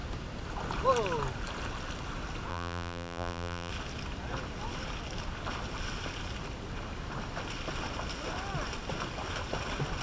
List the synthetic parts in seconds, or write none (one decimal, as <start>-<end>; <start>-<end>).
2.5-3.7